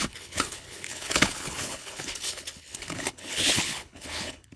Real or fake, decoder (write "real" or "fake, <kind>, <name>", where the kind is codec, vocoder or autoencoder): fake, codec, HILCodec